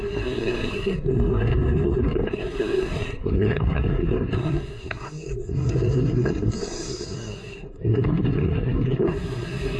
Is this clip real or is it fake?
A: fake